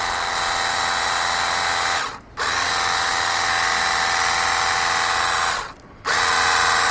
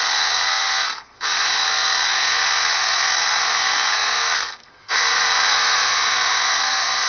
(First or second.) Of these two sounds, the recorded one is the first